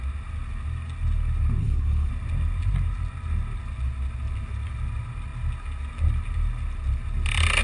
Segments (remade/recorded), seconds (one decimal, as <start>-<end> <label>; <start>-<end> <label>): 0.0-1.6 recorded; 1.6-2.1 remade; 2.1-7.6 recorded